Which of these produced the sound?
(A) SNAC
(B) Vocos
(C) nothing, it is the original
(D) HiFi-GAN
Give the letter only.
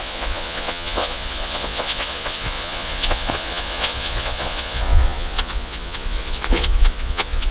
B